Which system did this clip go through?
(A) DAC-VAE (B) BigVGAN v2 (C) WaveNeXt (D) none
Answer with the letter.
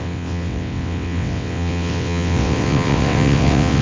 C